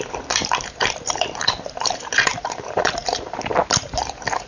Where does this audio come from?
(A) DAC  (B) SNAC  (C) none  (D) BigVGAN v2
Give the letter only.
D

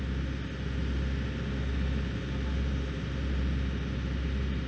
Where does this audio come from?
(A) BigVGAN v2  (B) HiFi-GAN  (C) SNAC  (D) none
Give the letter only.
D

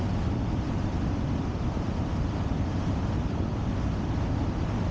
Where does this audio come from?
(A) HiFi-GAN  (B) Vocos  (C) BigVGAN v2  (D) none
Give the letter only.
C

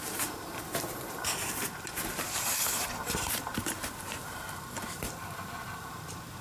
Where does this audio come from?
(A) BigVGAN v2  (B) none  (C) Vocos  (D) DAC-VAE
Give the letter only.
A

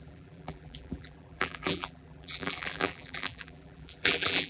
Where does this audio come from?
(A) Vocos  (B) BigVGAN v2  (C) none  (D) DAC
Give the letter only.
B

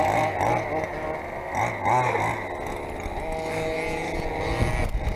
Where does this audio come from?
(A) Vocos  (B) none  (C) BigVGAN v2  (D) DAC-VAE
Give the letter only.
B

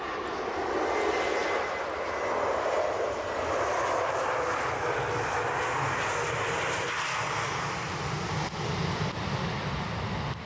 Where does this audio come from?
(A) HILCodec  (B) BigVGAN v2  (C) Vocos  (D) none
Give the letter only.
D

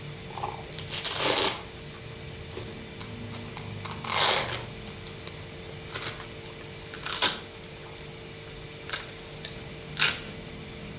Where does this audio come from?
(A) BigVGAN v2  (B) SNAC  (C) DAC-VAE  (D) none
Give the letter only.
D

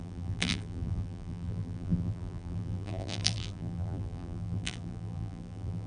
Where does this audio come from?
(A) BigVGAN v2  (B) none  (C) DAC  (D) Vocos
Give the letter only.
A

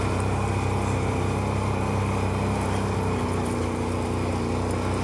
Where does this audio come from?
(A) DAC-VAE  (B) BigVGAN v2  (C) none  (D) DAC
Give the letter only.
C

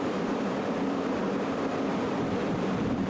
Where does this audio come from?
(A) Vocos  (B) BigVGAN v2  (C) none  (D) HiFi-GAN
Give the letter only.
B